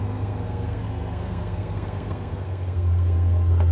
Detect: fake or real fake